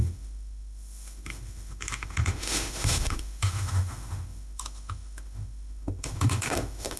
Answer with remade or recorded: remade